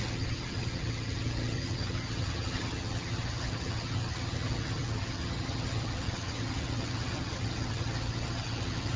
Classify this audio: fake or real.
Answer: fake